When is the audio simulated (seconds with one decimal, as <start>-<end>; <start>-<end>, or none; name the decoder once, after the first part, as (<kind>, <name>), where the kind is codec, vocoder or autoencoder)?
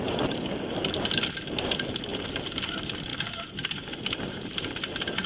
none